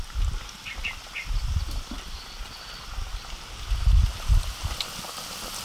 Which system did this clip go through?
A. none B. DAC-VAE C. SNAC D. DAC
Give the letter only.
A